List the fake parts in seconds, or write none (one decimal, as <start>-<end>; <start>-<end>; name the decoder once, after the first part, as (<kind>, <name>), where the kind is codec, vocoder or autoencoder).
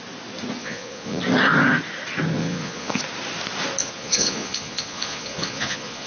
0.6-1.2 (vocoder, Vocos); 2.4-3.0; 3.8-6.1